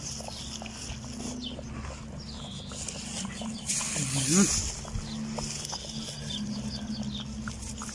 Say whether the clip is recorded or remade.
recorded